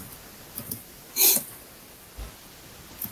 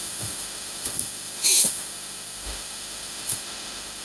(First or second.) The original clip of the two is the first